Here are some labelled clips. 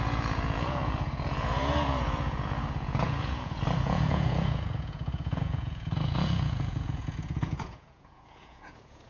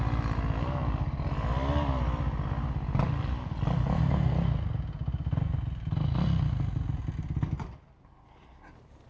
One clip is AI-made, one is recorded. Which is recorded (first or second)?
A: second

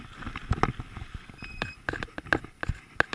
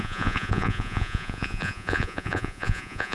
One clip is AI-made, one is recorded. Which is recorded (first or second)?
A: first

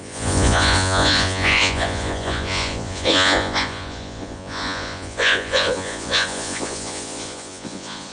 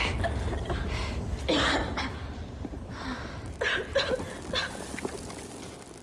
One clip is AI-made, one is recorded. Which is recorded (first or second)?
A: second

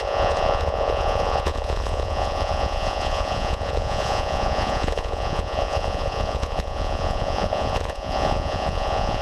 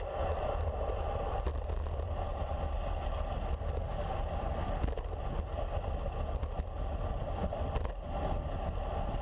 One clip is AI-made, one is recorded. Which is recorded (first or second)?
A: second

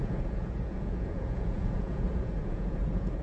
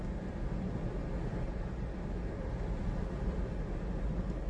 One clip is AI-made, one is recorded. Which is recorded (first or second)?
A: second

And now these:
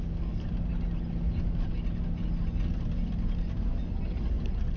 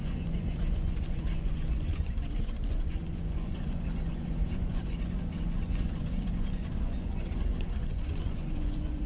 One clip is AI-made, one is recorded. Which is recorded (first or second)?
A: first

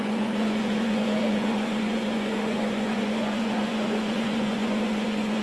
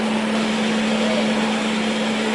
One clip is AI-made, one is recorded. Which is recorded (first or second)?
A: second